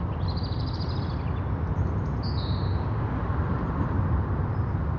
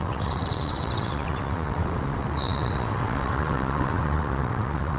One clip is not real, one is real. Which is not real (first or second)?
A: second